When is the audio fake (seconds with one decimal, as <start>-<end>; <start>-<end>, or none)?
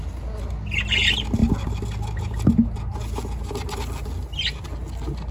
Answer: none